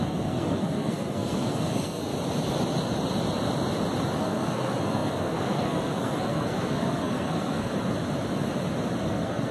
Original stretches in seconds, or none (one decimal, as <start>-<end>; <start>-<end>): 2.1-4.2; 7.7-9.0